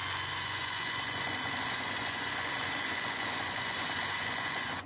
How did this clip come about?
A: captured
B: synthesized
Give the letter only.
B